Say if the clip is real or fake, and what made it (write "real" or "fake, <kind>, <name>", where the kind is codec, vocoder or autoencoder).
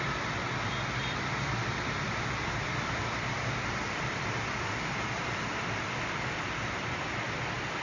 real